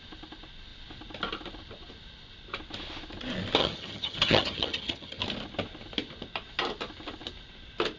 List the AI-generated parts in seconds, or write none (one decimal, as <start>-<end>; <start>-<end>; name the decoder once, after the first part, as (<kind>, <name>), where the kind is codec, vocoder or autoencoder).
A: 3.6-5.2 (vocoder, HiFi-GAN)